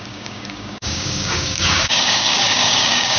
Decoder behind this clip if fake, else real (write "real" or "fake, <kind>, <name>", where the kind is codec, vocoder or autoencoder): fake, codec, DAC